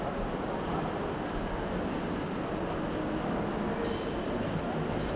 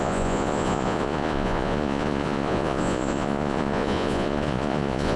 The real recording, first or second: first